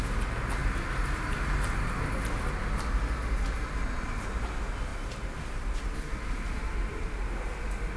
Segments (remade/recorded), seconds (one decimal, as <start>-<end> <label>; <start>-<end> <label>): 0.0-4.9 recorded; 4.9-7.4 remade; 7.4-8.0 recorded